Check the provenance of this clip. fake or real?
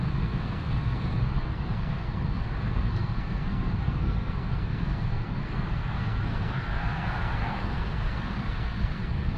fake